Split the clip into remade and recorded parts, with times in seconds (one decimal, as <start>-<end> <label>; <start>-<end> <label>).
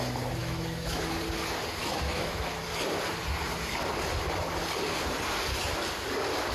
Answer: 0.0-0.4 recorded; 0.4-1.1 remade; 1.1-1.8 recorded; 1.8-2.4 remade; 2.4-6.5 recorded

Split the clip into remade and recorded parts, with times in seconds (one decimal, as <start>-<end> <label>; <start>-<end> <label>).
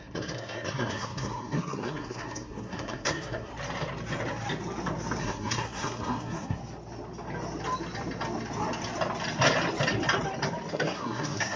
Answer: 0.0-3.5 remade; 3.5-5.2 recorded; 5.2-6.6 remade; 6.6-10.7 recorded; 10.7-11.6 remade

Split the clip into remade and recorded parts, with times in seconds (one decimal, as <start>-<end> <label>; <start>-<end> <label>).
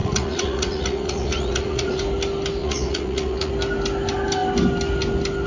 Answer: 0.0-2.0 remade; 2.0-2.6 recorded; 2.6-3.5 remade; 3.5-5.5 recorded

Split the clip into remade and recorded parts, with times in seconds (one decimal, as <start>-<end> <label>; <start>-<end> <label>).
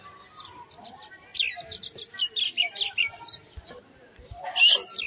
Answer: 0.0-5.1 recorded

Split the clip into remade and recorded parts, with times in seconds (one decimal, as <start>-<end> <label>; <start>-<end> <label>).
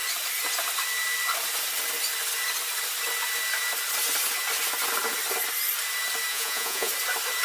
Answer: 0.0-6.3 recorded; 6.3-6.9 remade; 6.9-7.4 recorded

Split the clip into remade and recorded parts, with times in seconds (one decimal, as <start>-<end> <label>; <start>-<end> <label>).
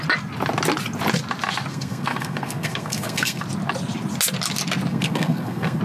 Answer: 0.0-1.7 recorded; 1.7-3.4 remade; 3.4-4.9 recorded; 4.9-5.8 remade